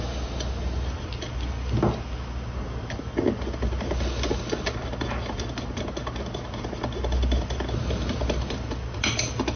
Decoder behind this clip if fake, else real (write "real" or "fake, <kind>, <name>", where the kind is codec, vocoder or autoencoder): real